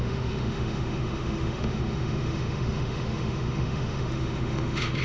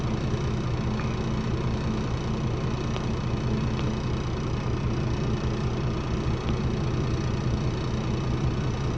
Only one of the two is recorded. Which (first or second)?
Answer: second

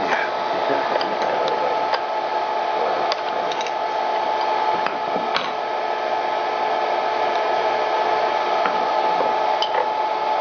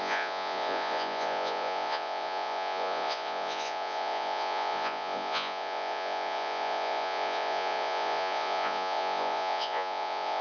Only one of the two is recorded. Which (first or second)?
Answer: first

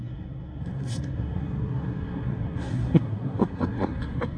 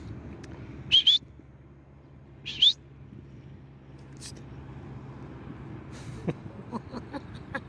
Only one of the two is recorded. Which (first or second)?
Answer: second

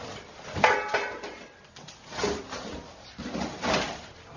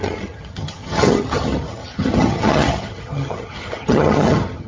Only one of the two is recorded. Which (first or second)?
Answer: first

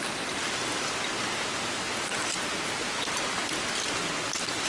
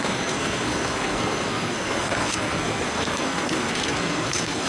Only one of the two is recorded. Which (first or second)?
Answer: first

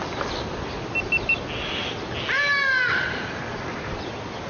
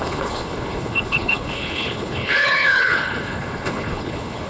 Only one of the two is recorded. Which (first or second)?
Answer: first